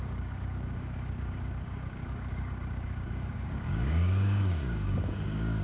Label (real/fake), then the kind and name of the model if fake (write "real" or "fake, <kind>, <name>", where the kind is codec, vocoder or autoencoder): fake, codec, DAC